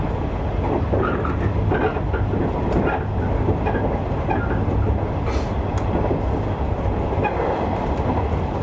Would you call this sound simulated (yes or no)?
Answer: no